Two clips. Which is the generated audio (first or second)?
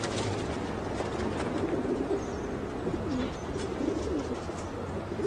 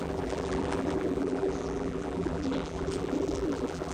second